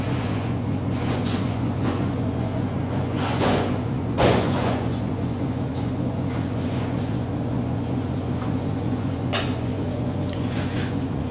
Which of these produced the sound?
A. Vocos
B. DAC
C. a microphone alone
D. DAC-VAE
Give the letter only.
A